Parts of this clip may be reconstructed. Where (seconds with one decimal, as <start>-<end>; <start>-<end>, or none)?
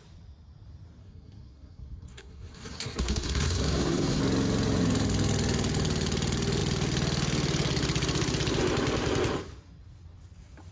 1.0-4.2